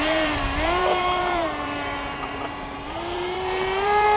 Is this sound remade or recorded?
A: remade